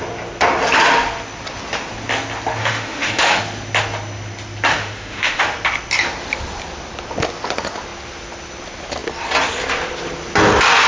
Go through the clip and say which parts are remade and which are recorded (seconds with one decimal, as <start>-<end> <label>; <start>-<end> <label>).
0.0-2.6 recorded; 2.6-3.4 remade; 3.4-4.7 recorded; 4.7-5.4 remade; 5.4-10.9 recorded